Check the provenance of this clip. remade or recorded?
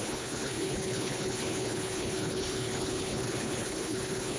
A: remade